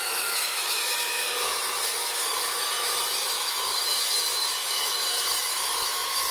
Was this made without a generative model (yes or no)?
no